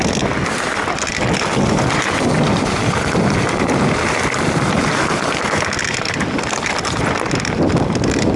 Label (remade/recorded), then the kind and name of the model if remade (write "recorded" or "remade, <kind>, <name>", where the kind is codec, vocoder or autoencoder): recorded